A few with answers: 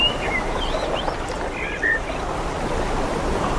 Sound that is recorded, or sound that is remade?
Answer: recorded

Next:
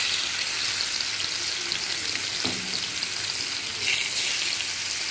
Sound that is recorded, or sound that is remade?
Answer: recorded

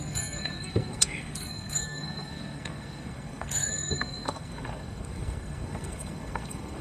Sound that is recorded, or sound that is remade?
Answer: remade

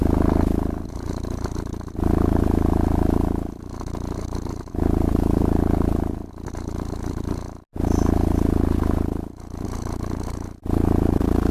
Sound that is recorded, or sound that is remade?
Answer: recorded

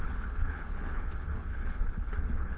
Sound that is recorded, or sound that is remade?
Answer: remade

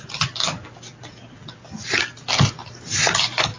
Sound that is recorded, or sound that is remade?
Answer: recorded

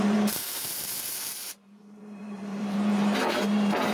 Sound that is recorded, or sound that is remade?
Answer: remade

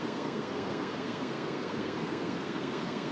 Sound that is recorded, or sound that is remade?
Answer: remade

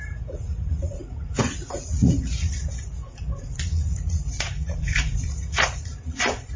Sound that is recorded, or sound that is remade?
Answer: remade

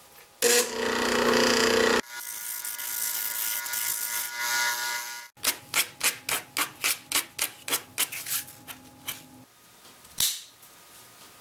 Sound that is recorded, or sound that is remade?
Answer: recorded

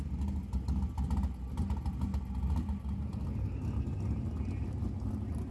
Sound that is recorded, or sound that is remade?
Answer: recorded